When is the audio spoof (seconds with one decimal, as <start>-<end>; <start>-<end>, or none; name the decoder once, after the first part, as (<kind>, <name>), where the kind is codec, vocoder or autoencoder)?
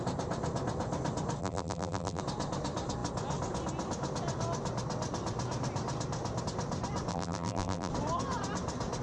1.4-2.2 (vocoder, BigVGAN v2); 7.1-7.9